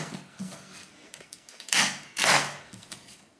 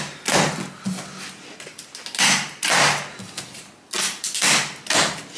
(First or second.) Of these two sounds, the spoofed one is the first